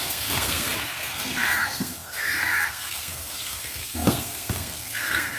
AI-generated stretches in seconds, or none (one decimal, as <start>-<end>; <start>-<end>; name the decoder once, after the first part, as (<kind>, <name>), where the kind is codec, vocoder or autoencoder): 0.0-5.4 (codec, SNAC)